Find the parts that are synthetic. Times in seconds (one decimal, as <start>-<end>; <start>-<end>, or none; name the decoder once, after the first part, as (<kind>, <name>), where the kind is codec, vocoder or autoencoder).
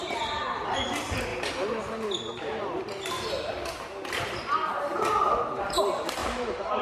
6.2-6.8 (vocoder, BigVGAN v2)